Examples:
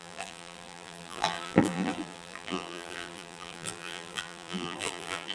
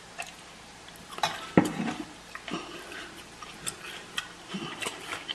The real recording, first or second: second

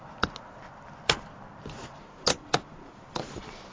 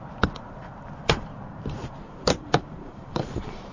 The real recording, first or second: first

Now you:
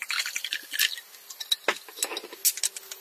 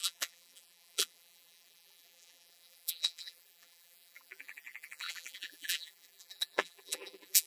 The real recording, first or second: first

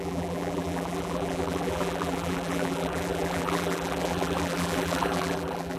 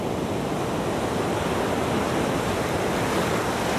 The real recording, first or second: second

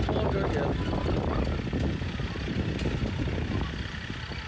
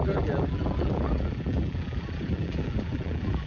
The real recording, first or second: first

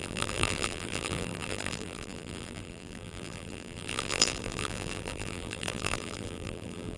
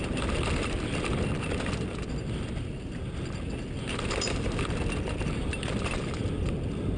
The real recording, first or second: second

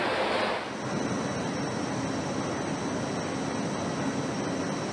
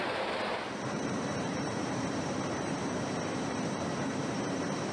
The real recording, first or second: first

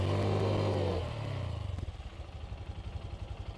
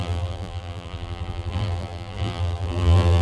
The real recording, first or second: first